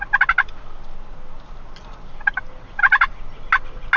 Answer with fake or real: real